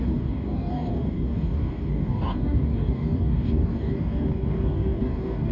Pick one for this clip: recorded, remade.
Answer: remade